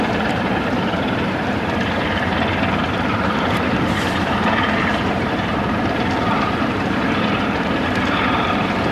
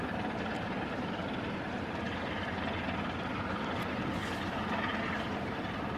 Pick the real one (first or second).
second